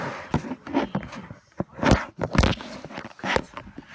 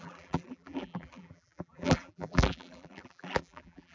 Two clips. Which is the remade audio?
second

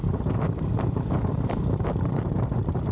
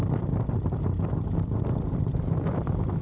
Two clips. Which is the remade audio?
first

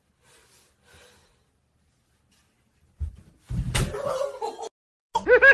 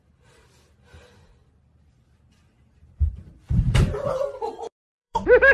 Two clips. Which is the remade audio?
second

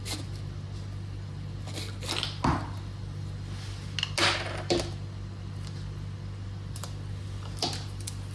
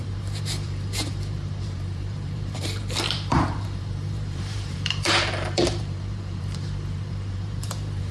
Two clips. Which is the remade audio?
second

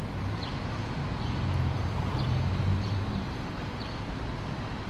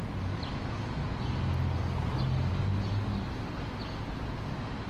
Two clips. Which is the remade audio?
first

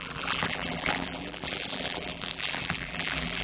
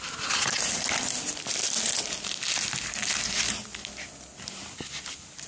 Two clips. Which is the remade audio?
first